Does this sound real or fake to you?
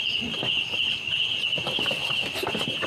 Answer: real